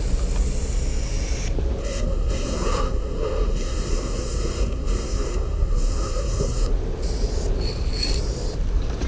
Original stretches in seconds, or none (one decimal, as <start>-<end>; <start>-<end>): 0.0-1.8; 6.7-9.1